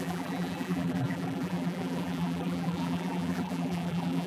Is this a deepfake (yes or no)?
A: yes